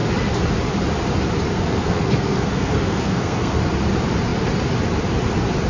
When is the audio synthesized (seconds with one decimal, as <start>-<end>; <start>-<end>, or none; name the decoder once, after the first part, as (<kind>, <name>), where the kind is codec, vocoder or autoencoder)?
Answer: 1.5-3.6 (codec, SNAC)

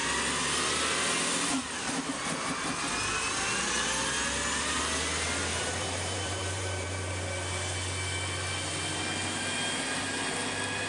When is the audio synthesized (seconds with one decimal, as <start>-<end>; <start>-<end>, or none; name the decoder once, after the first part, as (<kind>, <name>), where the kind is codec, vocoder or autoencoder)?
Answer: 5.5-7.1 (vocoder, BigVGAN v2)

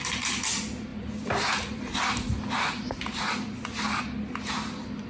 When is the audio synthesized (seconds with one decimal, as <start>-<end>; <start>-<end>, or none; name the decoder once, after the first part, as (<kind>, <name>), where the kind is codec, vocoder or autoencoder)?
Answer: none

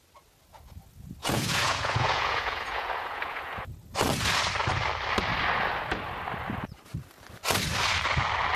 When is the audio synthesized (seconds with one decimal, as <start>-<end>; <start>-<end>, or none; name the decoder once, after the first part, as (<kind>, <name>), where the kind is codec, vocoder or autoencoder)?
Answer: 1.2-3.5 (vocoder, Vocos)

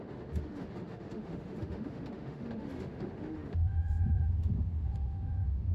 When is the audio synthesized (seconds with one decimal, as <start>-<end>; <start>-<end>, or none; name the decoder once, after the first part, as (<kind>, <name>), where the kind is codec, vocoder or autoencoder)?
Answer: 0.0-5.7 (autoencoder, DAC-VAE)

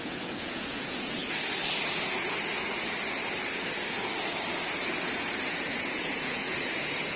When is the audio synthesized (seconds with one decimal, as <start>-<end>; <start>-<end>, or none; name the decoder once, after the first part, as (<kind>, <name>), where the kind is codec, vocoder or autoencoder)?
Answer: 0.0-1.2 (vocoder, Vocos); 5.5-7.2

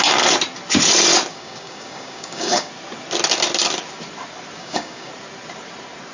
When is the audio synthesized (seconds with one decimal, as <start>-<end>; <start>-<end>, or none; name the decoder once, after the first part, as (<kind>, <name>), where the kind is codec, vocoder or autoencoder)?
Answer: 1.3-2.7 (codec, DAC); 4.6-5.1

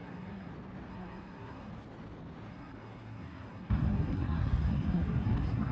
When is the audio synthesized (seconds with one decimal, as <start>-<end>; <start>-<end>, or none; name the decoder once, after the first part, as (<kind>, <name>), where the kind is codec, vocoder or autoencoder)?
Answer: 0.0-0.5 (codec, SNAC); 0.9-1.7; 2.5-5.7